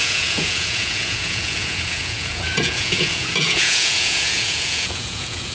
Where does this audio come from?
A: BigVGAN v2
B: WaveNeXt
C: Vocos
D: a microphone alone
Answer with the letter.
C